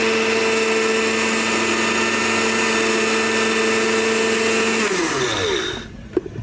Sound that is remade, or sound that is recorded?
recorded